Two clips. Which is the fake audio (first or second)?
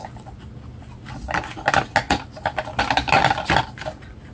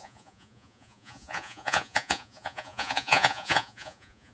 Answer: second